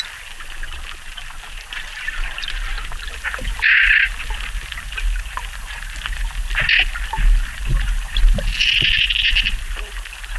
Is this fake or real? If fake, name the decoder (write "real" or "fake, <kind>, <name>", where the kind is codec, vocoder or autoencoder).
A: real